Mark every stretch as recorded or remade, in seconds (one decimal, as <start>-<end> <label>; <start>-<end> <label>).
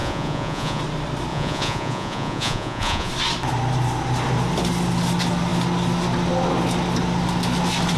0.0-0.8 remade; 0.8-1.3 recorded; 1.3-3.1 remade; 3.1-8.0 recorded